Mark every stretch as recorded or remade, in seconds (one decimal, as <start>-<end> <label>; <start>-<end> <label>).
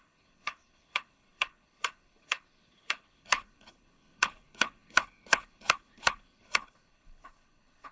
0.0-7.9 remade